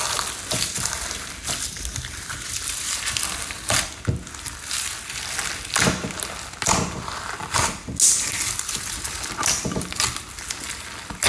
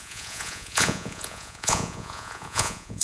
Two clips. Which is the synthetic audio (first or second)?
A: second